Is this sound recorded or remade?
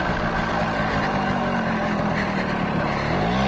recorded